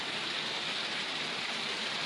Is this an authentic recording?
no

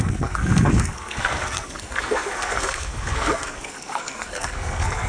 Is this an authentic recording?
no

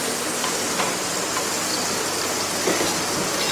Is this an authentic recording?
yes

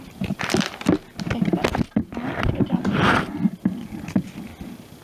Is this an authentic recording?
yes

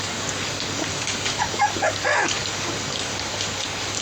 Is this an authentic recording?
no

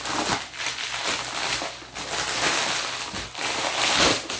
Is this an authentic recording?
yes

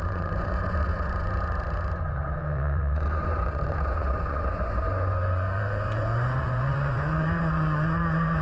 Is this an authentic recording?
no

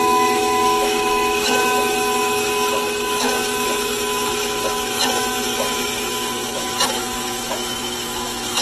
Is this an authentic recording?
no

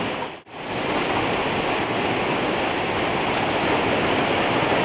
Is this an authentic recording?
yes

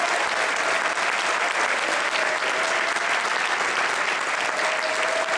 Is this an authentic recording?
yes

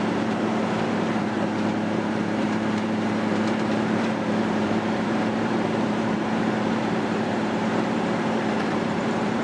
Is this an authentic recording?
no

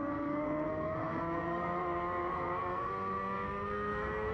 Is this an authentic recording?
no